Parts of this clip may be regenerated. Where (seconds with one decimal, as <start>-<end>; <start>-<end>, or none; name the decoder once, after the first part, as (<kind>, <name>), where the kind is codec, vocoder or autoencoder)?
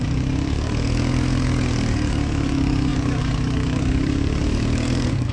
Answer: 0.0-5.3 (codec, DAC)